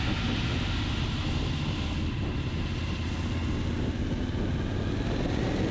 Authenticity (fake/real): real